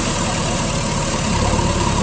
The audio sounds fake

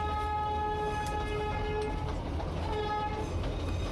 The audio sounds real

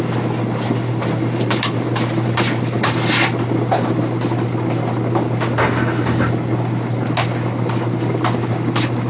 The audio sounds real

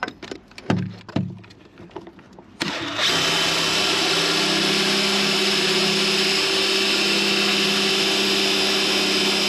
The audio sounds real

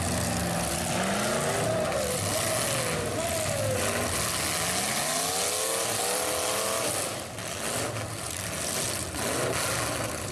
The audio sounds real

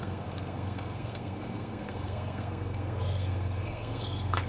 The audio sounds fake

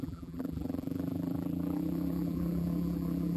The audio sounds fake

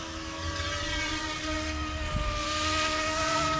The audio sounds real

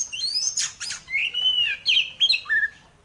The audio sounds real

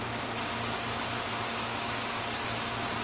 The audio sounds real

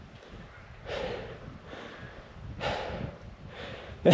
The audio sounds real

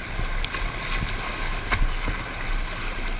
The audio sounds real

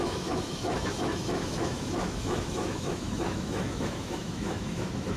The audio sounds fake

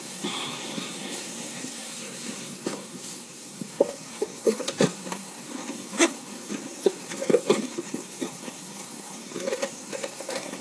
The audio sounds fake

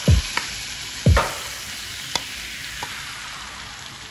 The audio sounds real